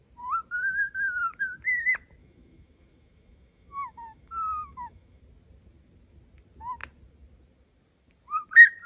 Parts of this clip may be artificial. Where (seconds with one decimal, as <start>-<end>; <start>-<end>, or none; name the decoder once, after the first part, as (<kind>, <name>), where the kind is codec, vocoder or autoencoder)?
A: 2.2-5.2 (autoencoder, DAC-VAE)